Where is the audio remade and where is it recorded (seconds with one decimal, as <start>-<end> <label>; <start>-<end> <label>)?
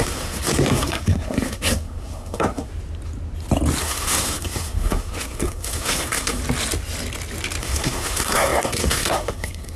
0.0-2.7 remade; 2.7-3.8 recorded; 3.8-6.4 remade; 6.4-7.6 recorded; 7.6-9.8 remade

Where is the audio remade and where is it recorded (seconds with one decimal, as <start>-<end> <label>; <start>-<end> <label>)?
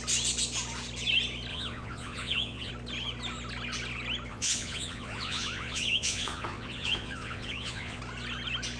0.0-1.5 recorded; 1.5-2.7 remade; 2.7-4.3 recorded; 4.3-8.0 remade; 8.0-8.8 recorded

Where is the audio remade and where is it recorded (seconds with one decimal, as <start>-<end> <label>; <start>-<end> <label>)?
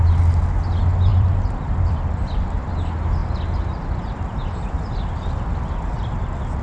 0.0-1.1 recorded; 1.1-2.7 remade; 2.7-6.6 recorded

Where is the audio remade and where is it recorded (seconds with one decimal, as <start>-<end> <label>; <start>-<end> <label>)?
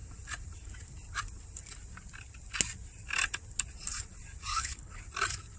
0.0-4.5 recorded; 4.5-5.0 remade; 5.0-5.6 recorded